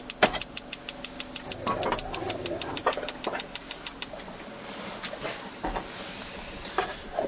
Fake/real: real